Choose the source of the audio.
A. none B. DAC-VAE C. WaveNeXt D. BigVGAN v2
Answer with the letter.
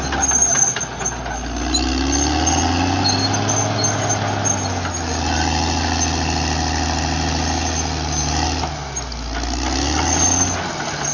A